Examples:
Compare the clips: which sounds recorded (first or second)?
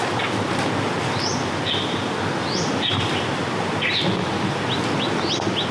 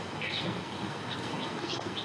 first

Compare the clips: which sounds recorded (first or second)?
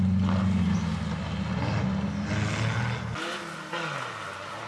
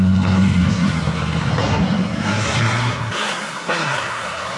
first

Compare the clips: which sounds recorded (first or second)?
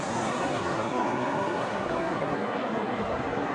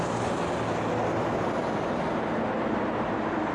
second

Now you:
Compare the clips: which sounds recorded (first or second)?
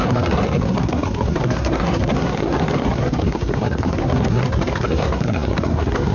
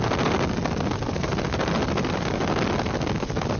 second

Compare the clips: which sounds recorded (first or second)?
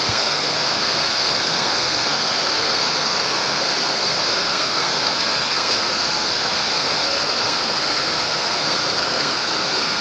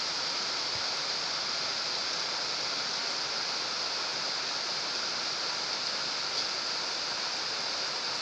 second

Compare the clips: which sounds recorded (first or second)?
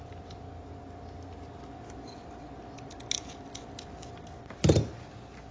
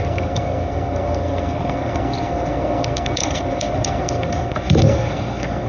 first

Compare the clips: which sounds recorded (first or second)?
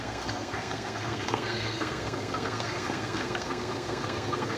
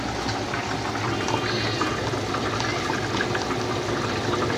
second